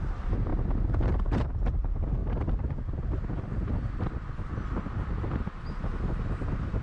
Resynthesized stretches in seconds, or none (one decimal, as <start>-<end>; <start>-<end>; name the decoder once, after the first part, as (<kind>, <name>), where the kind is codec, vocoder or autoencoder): 0.0-0.5 (vocoder, BigVGAN v2); 1.0-2.2; 6.3-6.8